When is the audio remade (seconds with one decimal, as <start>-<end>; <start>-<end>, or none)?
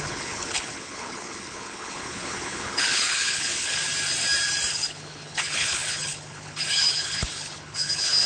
0.0-3.8; 4.7-8.3